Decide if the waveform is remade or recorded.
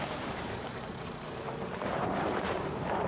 remade